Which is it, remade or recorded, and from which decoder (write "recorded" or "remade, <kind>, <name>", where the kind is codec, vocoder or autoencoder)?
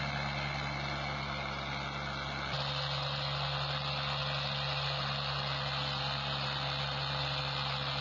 recorded